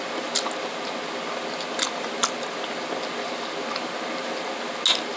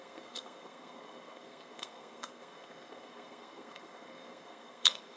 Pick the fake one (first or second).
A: second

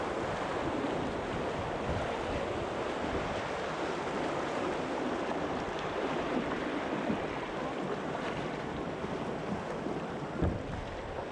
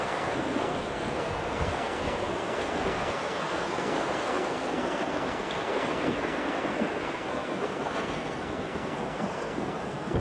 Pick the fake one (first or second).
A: second